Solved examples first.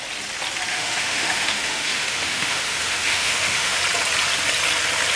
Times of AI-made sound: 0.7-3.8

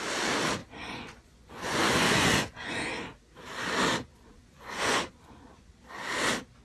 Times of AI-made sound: 0.6-2.9; 4.1-5.7

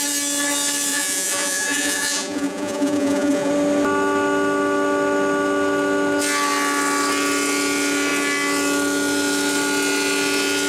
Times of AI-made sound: 0.9-3.5

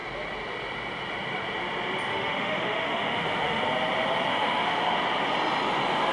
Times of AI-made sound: 2.1-3.6; 4.3-4.9

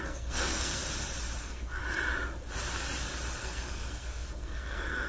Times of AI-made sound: 0.0-0.8; 1.4-1.8; 3.4-5.1